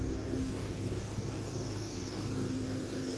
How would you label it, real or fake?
fake